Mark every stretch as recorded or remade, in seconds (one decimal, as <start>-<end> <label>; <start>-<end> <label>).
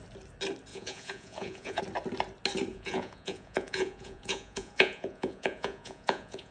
0.0-0.7 recorded; 0.7-1.8 remade; 1.8-2.7 recorded; 2.7-6.5 remade